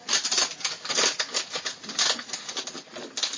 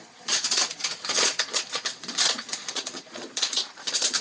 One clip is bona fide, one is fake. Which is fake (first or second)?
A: second